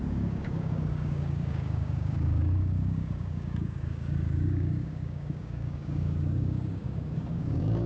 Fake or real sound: fake